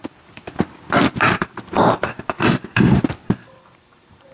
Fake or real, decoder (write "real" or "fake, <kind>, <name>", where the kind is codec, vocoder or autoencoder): fake, vocoder, BigVGAN v2